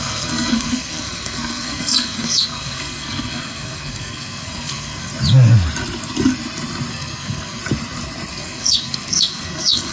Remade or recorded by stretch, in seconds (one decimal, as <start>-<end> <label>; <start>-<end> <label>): 0.0-5.1 remade; 5.1-6.9 recorded; 6.9-7.6 remade; 7.6-8.3 recorded; 8.3-9.9 remade